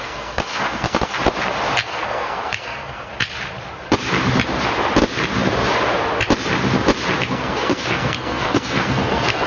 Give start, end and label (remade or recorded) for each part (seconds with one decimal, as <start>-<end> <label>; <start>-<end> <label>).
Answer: 0.0-1.2 remade; 1.2-1.9 recorded; 1.9-3.1 remade; 3.1-7.3 recorded; 7.3-9.5 remade